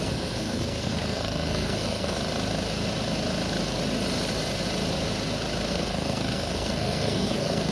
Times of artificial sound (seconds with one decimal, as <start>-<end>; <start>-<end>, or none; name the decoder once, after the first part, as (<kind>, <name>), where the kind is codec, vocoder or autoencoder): 0.0-2.2 (codec, SNAC); 5.7-7.7